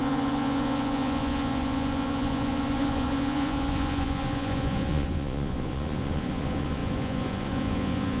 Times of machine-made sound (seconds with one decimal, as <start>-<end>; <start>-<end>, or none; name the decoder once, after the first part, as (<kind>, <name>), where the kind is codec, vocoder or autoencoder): 0.0-8.2 (vocoder, Vocos)